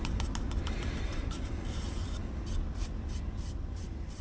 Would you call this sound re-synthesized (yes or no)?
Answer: yes